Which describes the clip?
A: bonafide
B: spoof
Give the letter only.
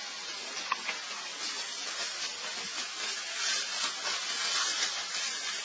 A